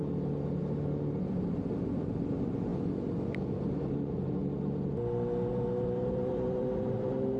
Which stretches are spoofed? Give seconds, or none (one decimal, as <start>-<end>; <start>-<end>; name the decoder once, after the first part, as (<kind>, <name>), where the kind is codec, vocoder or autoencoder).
0.6-2.7 (vocoder, BigVGAN v2); 3.7-4.4; 5.5-7.4